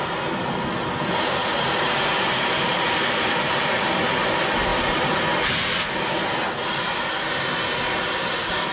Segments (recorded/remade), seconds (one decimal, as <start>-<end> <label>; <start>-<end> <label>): 0.0-1.4 recorded; 1.4-3.6 remade; 3.6-4.7 recorded; 4.7-5.2 remade; 5.2-8.7 recorded